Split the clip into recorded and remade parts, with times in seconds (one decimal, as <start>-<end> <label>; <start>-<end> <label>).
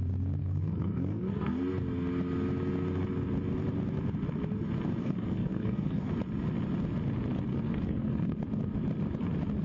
0.0-0.4 recorded; 0.4-1.6 remade; 1.6-5.0 recorded; 5.0-6.1 remade; 6.1-7.5 recorded; 7.5-8.4 remade; 8.4-9.6 recorded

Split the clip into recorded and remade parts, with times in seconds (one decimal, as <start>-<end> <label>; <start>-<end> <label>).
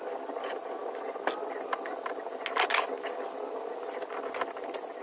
0.0-5.0 recorded